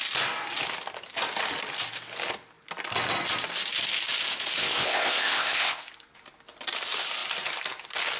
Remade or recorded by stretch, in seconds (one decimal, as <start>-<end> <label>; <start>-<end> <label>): 0.0-4.6 recorded; 4.6-5.9 remade; 5.9-8.2 recorded